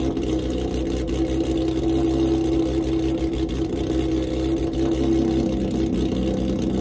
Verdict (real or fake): real